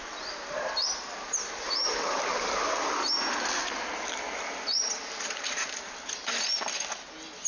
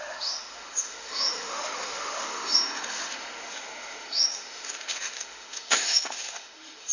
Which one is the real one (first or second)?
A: first